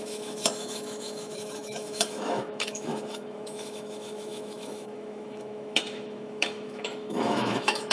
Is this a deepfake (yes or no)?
yes